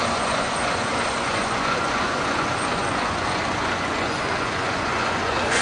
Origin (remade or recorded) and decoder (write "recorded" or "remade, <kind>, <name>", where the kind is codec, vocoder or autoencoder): remade, vocoder, Vocos